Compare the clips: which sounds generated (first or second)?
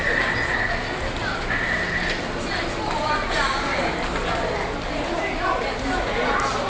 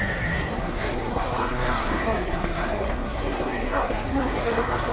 second